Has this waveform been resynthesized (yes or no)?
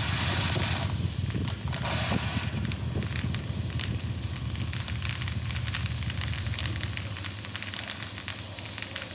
no